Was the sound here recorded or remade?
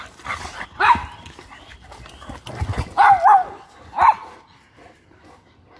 recorded